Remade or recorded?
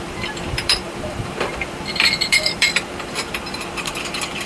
remade